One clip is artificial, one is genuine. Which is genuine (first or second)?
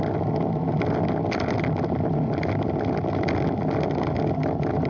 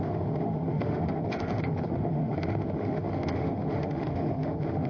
first